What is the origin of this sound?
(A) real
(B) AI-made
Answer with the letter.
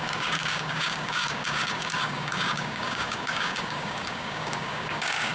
B